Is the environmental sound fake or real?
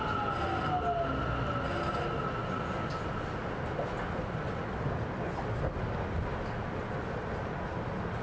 real